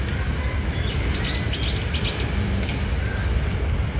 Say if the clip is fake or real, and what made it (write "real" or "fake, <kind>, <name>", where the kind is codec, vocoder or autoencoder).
real